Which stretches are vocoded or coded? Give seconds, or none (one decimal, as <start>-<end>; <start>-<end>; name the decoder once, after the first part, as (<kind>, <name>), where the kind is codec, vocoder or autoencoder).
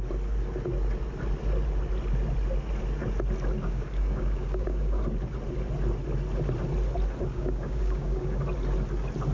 3.6-5.0 (codec, DAC); 7.3-8.4